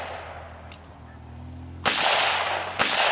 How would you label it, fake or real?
real